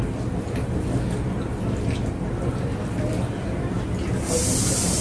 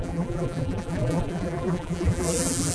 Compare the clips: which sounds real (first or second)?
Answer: first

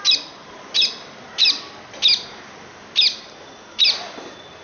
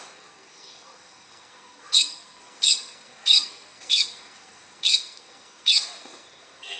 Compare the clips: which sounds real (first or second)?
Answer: first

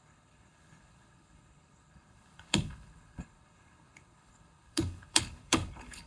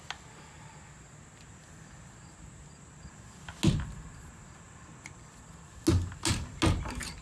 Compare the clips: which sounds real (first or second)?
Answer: second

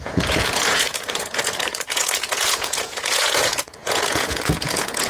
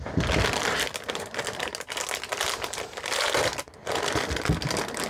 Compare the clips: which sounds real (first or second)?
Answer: second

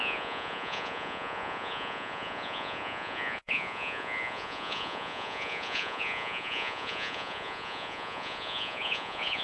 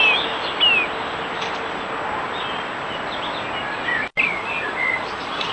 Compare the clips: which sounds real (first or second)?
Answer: second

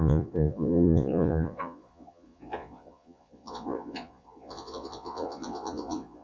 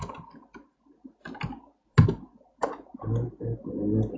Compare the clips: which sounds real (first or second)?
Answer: second